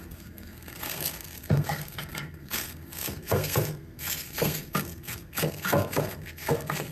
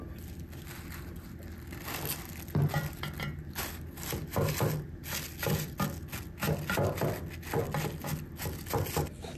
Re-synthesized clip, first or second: first